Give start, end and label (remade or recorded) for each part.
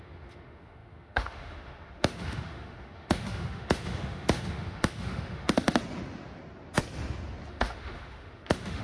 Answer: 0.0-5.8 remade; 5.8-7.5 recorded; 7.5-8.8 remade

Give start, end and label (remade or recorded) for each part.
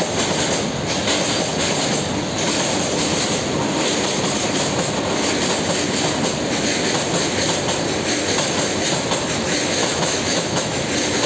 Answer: 0.0-9.8 recorded; 9.8-10.8 remade; 10.8-11.3 recorded